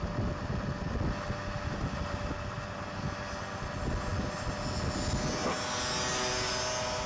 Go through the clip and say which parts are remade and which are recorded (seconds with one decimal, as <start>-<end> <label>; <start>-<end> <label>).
0.0-7.1 recorded